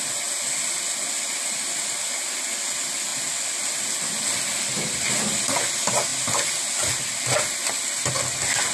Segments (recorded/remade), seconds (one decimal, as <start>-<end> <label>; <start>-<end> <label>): 0.0-8.7 recorded